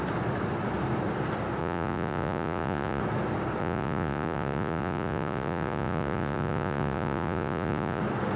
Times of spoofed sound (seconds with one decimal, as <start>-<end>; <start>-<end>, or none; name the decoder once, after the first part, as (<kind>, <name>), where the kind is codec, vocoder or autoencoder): 1.6-3.0 (vocoder, Vocos); 3.6-8.0